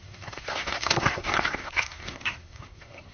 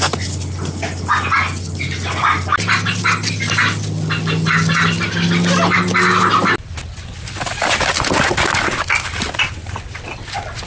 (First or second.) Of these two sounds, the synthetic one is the first